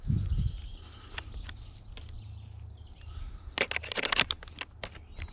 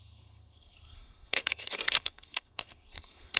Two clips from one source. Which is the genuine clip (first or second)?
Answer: first